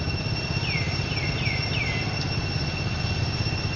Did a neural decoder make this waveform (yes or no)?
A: no